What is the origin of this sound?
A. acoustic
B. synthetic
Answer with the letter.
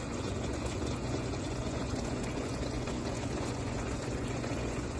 B